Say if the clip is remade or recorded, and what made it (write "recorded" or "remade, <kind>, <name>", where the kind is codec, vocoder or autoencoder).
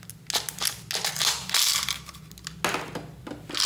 recorded